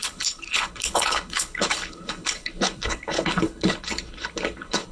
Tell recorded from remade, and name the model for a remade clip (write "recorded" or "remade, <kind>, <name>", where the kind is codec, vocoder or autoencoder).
remade, codec, HILCodec